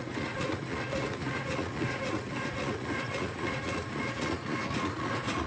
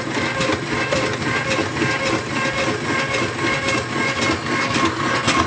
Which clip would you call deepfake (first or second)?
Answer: first